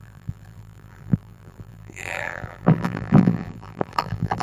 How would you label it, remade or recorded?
remade